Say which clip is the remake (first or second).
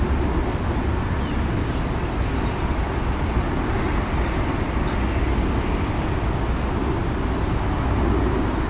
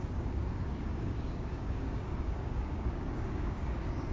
second